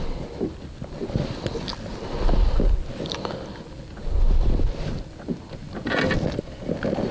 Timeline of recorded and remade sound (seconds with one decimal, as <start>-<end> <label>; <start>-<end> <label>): 0.0-7.1 recorded